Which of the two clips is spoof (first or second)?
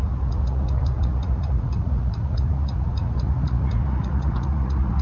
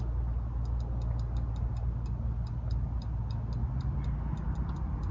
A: first